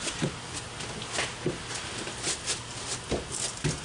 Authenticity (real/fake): real